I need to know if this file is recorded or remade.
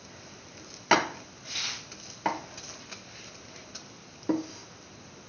recorded